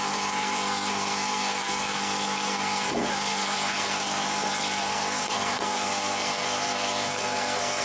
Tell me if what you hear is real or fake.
fake